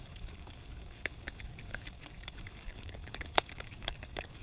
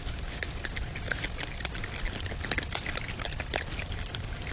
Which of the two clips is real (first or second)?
second